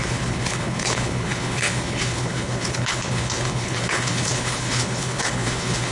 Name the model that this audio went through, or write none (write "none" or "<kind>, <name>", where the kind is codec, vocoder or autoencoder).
codec, HILCodec